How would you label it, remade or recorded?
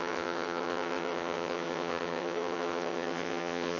remade